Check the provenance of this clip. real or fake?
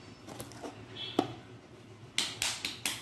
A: real